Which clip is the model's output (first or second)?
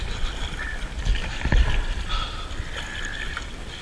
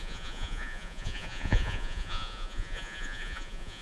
second